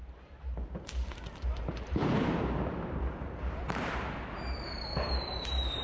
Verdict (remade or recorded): remade